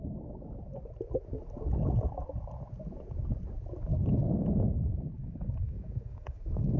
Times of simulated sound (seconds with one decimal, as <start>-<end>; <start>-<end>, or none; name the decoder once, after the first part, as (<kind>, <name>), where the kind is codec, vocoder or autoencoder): 5.2-6.8 (codec, DAC)